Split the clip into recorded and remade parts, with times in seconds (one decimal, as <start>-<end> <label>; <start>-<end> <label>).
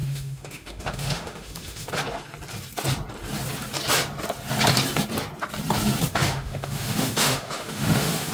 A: 0.0-1.9 remade; 1.9-6.1 recorded; 6.1-8.3 remade